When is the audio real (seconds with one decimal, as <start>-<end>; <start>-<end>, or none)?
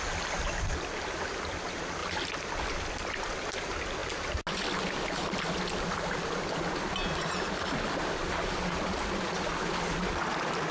0.0-2.0; 2.6-10.7